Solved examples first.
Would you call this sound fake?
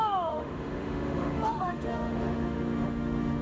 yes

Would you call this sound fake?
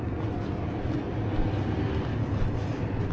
no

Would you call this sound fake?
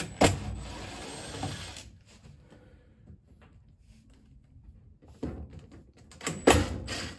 no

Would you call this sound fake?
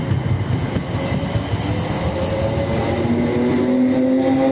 no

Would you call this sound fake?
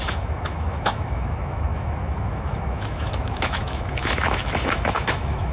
yes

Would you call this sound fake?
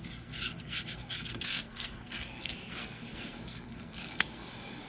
yes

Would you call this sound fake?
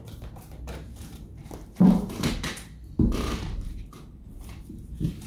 yes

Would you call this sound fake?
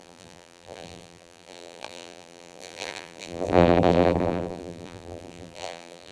yes